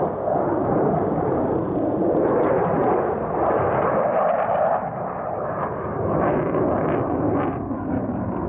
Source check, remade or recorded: remade